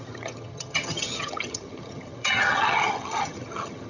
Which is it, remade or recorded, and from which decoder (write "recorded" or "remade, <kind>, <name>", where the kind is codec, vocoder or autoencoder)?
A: remade, vocoder, HiFi-GAN